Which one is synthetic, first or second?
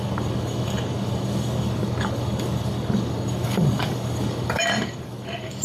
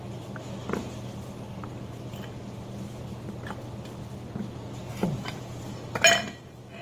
first